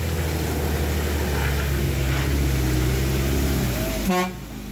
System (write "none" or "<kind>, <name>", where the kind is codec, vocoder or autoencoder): none